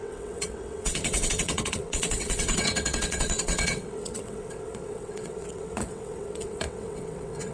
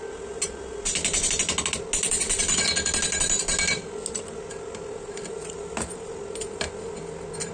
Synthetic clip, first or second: first